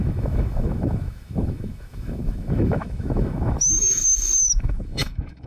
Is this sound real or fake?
fake